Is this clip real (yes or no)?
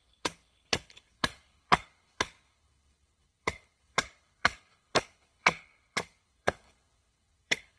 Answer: no